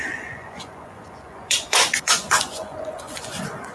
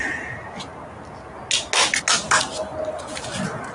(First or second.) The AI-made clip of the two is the first